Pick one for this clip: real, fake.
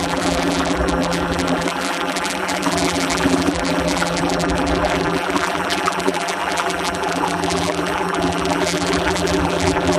fake